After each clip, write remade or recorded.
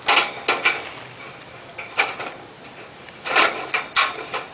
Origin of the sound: recorded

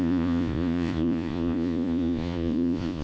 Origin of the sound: remade